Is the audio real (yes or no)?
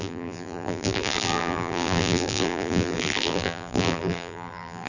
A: no